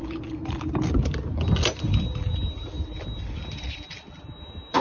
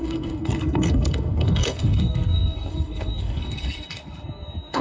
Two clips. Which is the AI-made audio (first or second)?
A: second